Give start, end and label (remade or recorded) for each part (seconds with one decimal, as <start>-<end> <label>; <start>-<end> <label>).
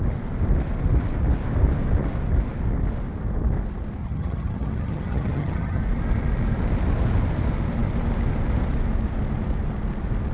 0.0-4.0 recorded; 4.0-5.8 remade; 5.8-10.3 recorded